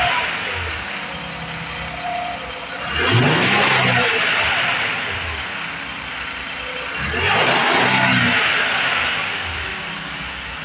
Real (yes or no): yes